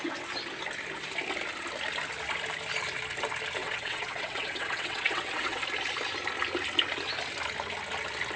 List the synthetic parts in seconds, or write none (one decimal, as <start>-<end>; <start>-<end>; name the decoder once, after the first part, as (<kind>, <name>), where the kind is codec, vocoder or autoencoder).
3.6-5.6 (vocoder, WaveNeXt)